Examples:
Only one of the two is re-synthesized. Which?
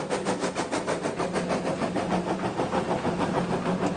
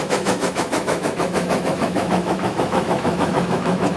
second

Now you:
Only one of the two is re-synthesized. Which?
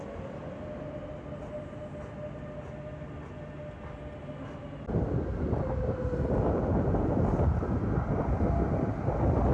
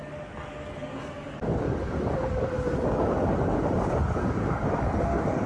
second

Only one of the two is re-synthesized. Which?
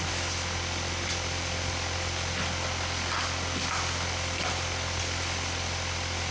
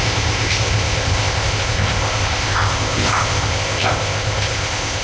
second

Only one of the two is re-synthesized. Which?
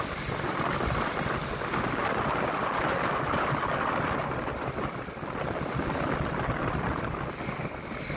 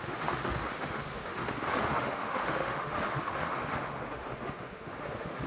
second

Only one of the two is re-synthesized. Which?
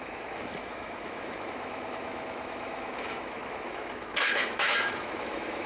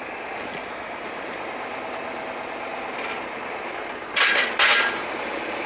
first